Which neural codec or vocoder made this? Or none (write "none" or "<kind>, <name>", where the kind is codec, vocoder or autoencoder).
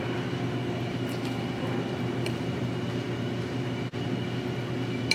none